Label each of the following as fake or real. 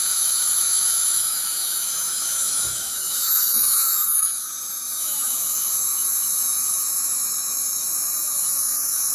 fake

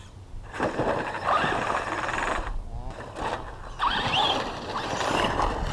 real